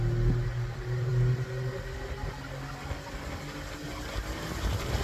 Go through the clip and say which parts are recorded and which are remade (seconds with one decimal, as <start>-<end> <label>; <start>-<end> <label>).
0.0-5.0 recorded